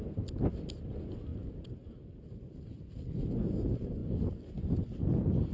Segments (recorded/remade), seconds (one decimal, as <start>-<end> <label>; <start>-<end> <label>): 0.0-5.5 recorded